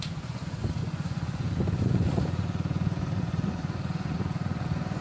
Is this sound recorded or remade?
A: remade